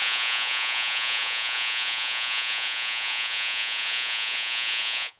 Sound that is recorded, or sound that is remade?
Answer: remade